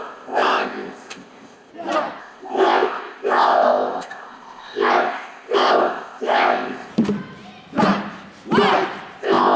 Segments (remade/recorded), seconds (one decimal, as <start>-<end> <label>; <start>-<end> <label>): 0.0-1.7 remade; 1.7-2.2 recorded; 2.2-6.9 remade; 6.9-9.2 recorded; 9.2-9.6 remade